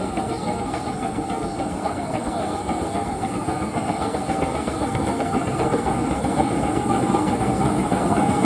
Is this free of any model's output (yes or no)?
no